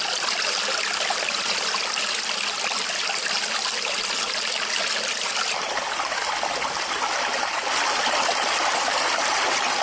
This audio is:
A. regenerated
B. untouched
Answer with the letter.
A